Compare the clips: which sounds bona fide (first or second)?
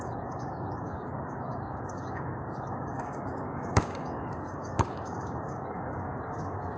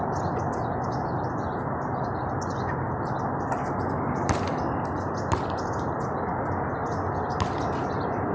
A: second